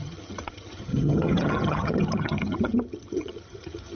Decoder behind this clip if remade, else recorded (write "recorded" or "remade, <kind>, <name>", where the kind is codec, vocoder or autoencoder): remade, vocoder, HiFi-GAN